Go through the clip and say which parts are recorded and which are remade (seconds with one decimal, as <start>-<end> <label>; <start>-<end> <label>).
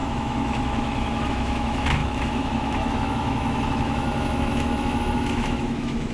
0.0-6.1 remade